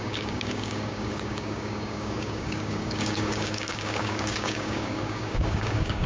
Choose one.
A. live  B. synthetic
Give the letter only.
B